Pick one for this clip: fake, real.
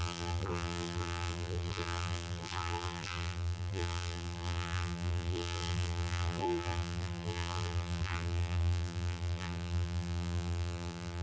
fake